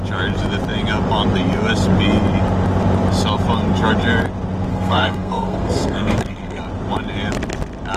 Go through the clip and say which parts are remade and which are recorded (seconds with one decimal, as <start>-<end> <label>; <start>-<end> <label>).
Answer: 0.0-4.7 recorded; 4.7-6.6 remade; 6.6-8.0 recorded